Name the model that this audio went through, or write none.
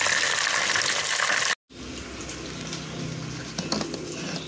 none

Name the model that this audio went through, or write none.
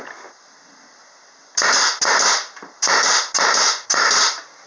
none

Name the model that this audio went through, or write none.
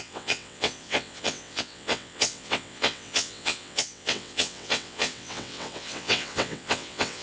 vocoder, WaveNeXt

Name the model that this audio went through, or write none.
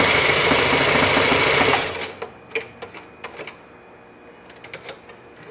none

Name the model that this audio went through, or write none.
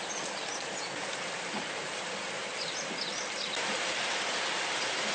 none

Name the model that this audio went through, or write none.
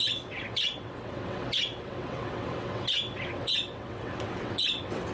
vocoder, WaveNeXt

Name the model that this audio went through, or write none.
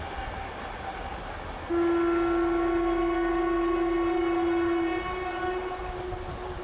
none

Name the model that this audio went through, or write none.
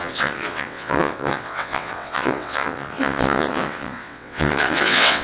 vocoder, WaveNeXt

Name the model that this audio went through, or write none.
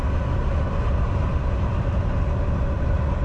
none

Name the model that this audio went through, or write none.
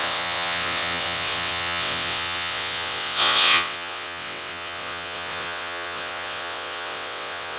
vocoder, WaveNeXt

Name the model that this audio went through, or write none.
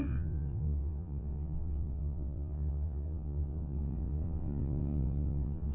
vocoder, WaveNeXt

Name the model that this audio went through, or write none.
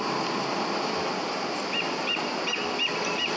none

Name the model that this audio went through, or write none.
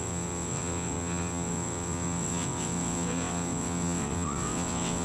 vocoder, WaveNeXt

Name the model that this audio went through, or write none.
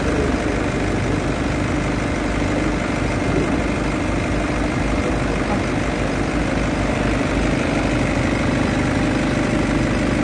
none